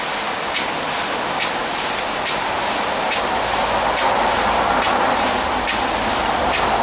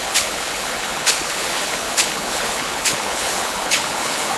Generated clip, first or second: second